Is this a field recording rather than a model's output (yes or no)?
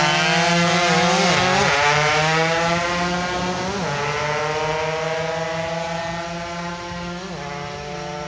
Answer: yes